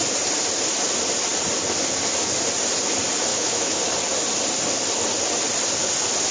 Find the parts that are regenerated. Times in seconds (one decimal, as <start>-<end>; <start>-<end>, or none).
3.3-3.8